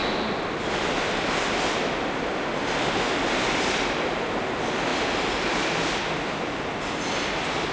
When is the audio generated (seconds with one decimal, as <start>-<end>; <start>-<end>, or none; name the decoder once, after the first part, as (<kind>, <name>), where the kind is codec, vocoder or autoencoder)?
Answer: 4.9-6.0 (vocoder, BigVGAN v2)